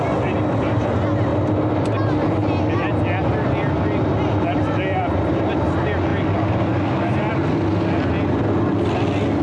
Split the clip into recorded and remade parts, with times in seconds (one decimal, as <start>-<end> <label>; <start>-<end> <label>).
0.0-9.4 recorded